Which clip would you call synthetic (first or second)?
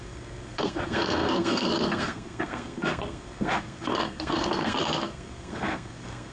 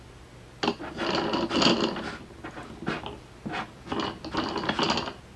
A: first